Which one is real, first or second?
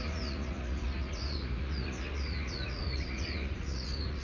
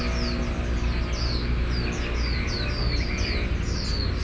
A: second